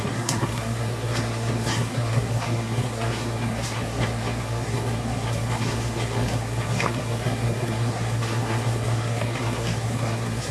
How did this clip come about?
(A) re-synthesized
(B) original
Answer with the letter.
A